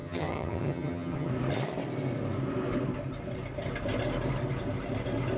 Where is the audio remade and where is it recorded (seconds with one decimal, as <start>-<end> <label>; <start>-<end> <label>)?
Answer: 0.0-1.3 remade; 1.3-5.4 recorded